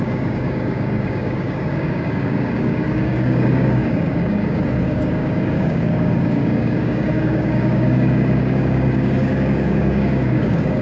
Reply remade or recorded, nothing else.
remade